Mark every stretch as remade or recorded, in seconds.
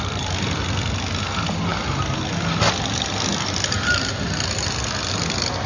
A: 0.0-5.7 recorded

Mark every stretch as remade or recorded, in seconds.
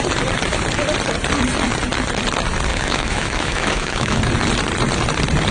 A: 0.0-2.7 recorded; 2.7-4.2 remade; 4.2-5.5 recorded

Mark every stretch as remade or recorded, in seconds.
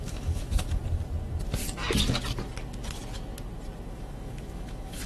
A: 0.0-0.8 remade; 0.8-3.9 recorded; 3.9-5.1 remade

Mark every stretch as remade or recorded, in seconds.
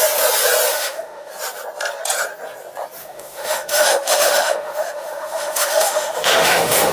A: 0.0-0.7 recorded; 0.7-1.3 remade; 1.3-3.0 recorded; 3.0-6.9 remade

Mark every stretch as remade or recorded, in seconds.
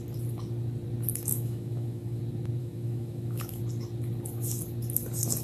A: 0.0-1.3 recorded; 1.3-2.2 remade; 2.2-2.6 recorded; 2.6-3.6 remade; 3.6-5.4 recorded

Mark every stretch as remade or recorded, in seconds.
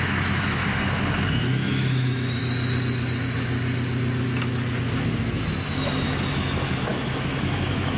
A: 0.0-0.6 remade; 0.6-1.3 recorded; 1.3-2.4 remade; 2.4-5.0 recorded; 5.0-8.0 remade